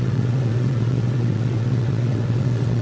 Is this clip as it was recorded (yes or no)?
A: no